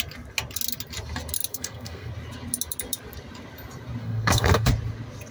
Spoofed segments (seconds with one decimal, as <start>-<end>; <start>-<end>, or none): 1.5-2.1; 4.0-4.7